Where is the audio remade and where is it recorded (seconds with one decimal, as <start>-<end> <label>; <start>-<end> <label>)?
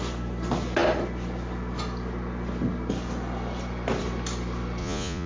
0.0-4.8 recorded; 4.8-5.3 remade